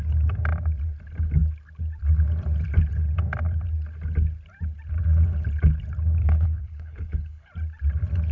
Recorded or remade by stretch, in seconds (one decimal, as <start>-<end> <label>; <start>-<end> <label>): 0.0-6.2 recorded; 6.2-7.5 remade; 7.5-8.3 recorded

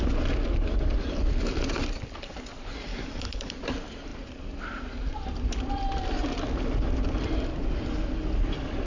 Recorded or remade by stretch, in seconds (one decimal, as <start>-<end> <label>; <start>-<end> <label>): 0.0-2.9 recorded; 2.9-3.5 remade; 3.5-8.9 recorded

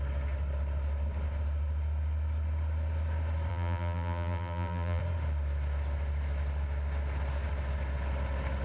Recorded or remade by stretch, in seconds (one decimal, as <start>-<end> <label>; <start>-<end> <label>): 0.0-3.5 recorded; 3.5-5.0 remade; 5.0-8.6 recorded